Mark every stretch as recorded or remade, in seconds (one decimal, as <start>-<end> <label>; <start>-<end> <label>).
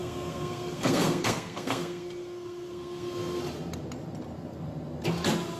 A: 0.0-3.4 remade; 3.4-5.6 recorded